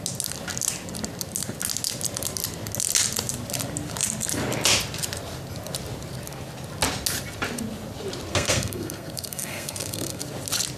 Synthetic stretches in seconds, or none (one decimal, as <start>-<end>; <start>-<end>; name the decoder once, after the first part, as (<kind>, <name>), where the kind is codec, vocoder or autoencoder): 8.3-10.2 (codec, SNAC)